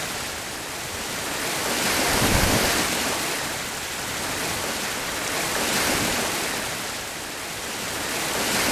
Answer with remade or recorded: remade